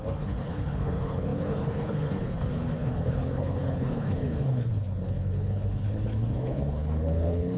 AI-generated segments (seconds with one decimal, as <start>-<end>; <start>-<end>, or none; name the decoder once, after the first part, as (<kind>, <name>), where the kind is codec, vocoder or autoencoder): 0.0-7.6 (codec, HILCodec)